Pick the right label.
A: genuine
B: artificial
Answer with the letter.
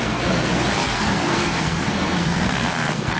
B